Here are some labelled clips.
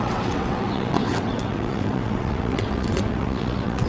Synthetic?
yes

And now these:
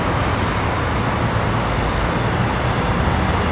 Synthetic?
no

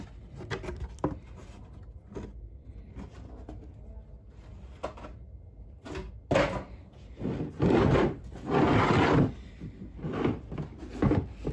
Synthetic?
no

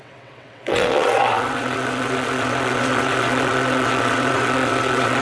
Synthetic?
yes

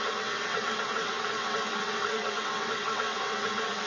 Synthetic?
yes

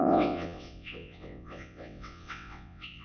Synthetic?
yes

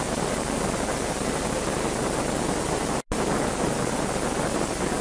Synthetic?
no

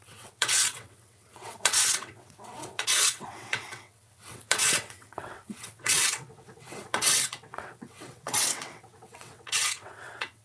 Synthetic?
yes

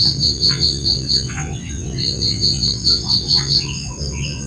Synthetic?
yes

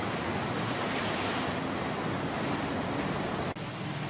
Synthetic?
no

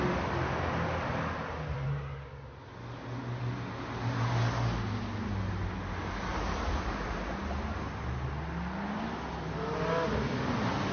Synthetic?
no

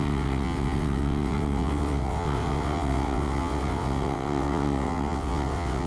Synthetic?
yes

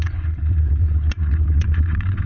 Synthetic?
yes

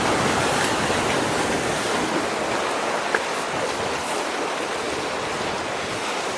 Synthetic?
no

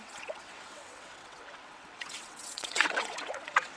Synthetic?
yes